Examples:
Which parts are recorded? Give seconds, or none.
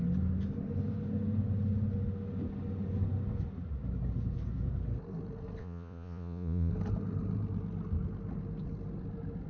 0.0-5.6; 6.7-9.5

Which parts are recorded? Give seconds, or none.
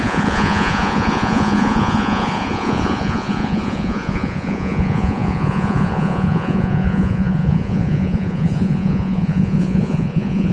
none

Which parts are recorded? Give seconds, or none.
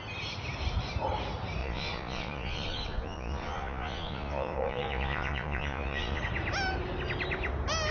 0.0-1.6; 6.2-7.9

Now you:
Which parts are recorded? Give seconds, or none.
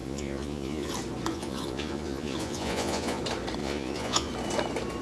0.9-1.3; 3.2-3.6; 4.3-5.0